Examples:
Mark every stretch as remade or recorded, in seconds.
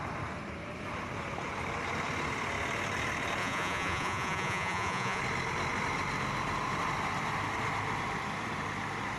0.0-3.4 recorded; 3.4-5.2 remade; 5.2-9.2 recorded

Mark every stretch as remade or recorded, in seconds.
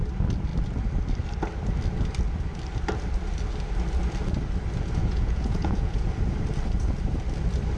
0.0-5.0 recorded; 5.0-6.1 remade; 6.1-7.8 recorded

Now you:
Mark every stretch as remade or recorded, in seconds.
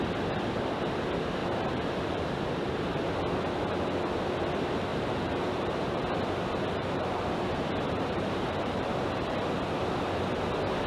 0.0-1.4 recorded; 1.4-2.4 remade; 2.4-4.9 recorded; 4.9-6.0 remade; 6.0-6.8 recorded; 6.8-9.4 remade; 9.4-10.9 recorded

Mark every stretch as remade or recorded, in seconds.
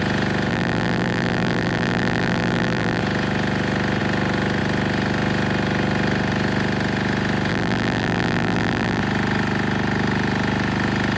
0.0-0.5 recorded; 0.5-3.0 remade; 3.0-7.5 recorded; 7.5-9.0 remade; 9.0-11.2 recorded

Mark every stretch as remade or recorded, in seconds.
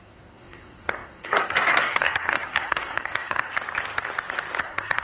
0.0-3.5 remade; 3.5-4.6 recorded; 4.6-5.0 remade